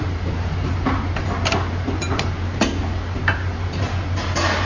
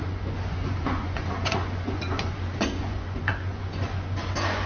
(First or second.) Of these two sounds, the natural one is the first